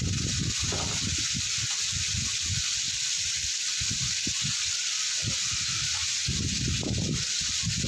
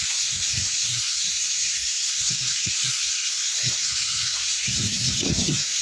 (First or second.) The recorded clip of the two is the first